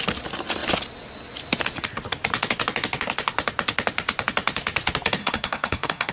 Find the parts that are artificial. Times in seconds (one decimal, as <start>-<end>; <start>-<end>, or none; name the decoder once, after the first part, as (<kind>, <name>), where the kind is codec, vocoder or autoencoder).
5.2-6.1 (codec, SNAC)